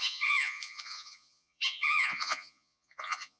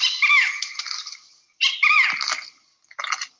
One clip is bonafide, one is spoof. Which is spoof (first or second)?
first